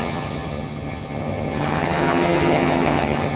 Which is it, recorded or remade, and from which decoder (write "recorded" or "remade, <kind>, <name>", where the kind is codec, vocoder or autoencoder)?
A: remade, vocoder, HiFi-GAN